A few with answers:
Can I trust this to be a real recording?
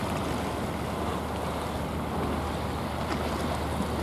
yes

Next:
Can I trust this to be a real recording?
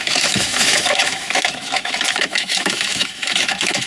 no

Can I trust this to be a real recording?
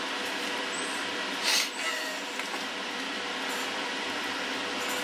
yes